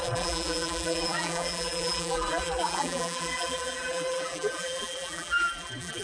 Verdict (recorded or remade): remade